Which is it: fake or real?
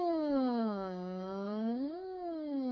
fake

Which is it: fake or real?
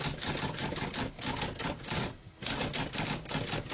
real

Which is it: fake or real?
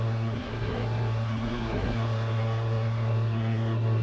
fake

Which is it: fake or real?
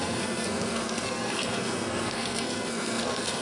fake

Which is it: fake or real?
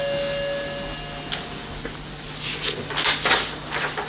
real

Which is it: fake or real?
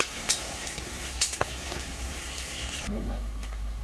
fake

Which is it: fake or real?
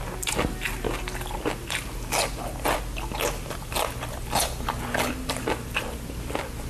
real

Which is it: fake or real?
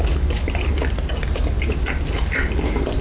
real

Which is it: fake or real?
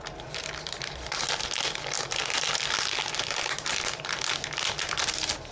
real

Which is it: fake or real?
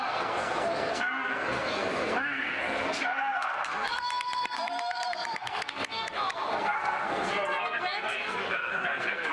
fake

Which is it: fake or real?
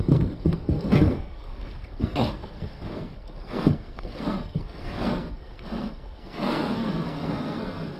fake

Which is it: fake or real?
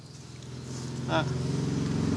real